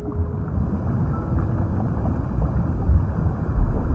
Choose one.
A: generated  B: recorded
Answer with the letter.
B